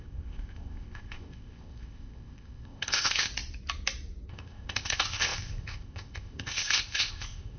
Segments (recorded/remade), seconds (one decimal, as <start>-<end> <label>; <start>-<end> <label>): 0.0-3.3 remade; 3.3-4.3 recorded; 4.3-7.6 remade

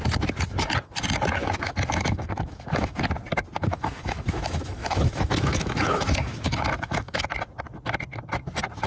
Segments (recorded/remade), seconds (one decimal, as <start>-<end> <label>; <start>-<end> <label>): 0.0-1.4 recorded; 1.4-3.0 remade; 3.0-3.6 recorded; 3.6-7.2 remade; 7.2-8.9 recorded

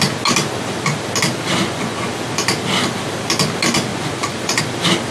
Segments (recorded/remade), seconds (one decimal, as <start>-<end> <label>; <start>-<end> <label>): 0.0-1.6 recorded; 1.6-2.1 remade; 2.1-3.9 recorded; 3.9-4.6 remade; 4.6-5.1 recorded

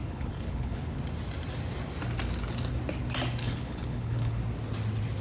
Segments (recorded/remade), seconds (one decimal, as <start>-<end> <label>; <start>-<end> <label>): 0.0-1.0 remade; 1.0-3.4 recorded; 3.4-4.4 remade; 4.4-5.2 recorded

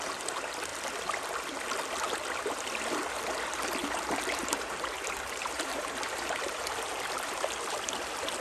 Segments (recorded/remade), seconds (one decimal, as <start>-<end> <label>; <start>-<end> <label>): 0.0-3.8 recorded; 3.8-6.6 remade; 6.6-8.4 recorded